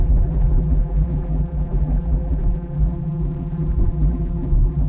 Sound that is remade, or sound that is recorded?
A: remade